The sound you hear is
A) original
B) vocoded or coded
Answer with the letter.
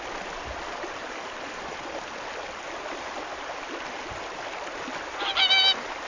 A